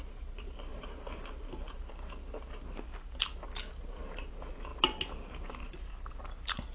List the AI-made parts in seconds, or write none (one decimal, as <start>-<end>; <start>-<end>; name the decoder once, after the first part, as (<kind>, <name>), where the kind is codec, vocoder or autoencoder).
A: 4.7-6.1 (vocoder, BigVGAN v2)